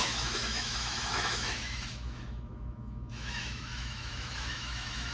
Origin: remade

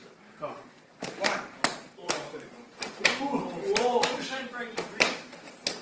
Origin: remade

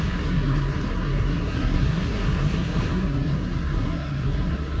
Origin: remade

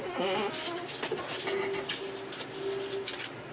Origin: recorded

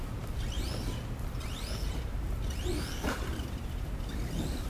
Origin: recorded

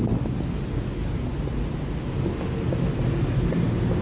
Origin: recorded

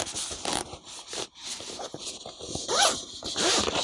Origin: remade